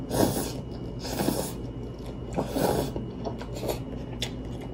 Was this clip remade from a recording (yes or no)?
no